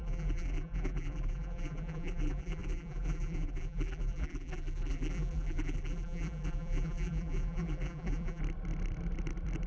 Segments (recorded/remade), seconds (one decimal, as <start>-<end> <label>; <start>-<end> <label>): 0.0-8.4 remade; 8.4-9.7 recorded